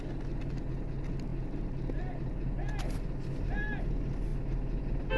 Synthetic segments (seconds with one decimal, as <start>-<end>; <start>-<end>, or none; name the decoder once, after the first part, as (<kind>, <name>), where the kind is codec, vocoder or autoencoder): none